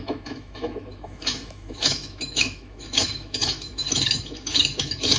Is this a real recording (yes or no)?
no